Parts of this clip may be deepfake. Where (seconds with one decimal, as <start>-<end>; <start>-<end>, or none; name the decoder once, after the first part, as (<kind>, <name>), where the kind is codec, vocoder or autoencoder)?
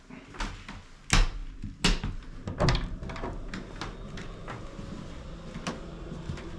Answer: none